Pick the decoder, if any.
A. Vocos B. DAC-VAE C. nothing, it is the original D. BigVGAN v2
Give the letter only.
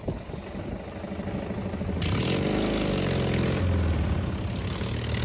C